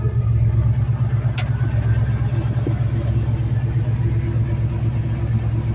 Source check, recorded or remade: recorded